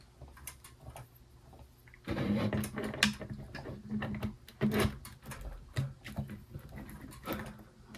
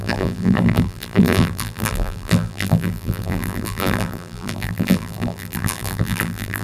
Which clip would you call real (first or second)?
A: first